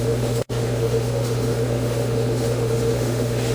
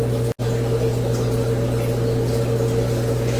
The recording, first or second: second